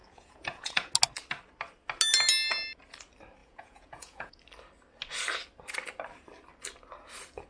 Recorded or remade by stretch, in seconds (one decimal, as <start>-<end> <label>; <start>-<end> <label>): 0.0-0.9 remade; 0.9-3.4 recorded; 3.4-4.4 remade; 4.4-7.5 recorded